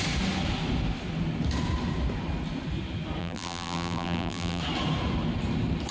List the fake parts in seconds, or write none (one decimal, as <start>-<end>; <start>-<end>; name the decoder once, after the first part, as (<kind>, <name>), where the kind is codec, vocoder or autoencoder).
3.2-4.6 (vocoder, BigVGAN v2)